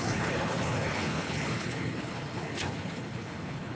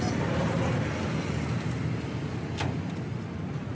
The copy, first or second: first